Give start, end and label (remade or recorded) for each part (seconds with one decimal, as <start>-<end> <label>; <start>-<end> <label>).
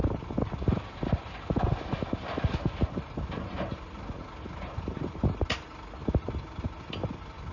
0.0-7.5 recorded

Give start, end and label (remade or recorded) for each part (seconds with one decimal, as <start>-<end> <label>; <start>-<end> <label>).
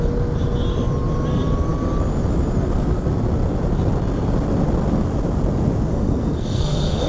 0.0-5.9 recorded; 5.9-7.1 remade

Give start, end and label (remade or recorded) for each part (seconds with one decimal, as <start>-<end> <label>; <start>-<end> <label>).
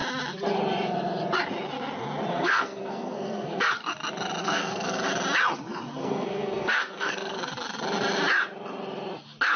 0.0-2.3 recorded; 2.3-3.7 remade; 3.7-4.4 recorded; 4.4-5.1 remade; 5.1-6.0 recorded; 6.0-7.5 remade; 7.5-9.6 recorded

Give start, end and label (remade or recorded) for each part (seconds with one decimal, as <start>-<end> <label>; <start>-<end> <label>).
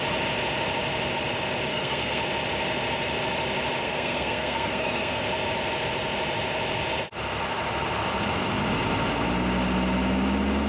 0.0-1.7 recorded; 1.7-2.2 remade; 2.2-3.8 recorded; 3.8-5.2 remade; 5.2-10.7 recorded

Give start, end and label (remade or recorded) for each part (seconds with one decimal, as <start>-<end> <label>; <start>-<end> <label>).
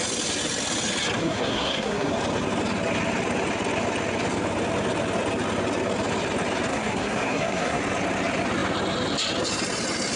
0.0-1.2 recorded; 1.2-2.1 remade; 2.1-6.7 recorded; 6.7-7.8 remade; 7.8-10.2 recorded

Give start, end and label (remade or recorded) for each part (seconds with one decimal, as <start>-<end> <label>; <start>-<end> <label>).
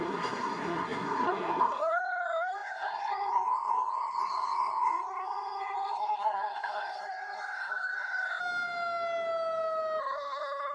0.0-8.4 remade; 8.4-10.0 recorded; 10.0-10.7 remade